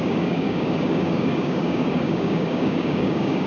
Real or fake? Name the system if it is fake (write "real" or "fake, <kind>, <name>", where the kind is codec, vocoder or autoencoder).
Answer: fake, codec, DAC